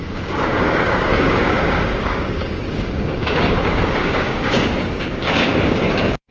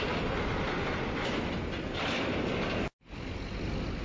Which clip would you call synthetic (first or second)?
first